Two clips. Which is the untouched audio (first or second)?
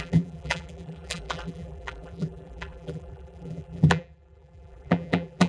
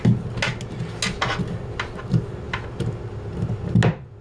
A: second